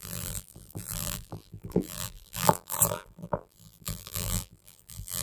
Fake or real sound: fake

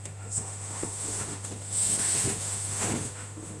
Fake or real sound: fake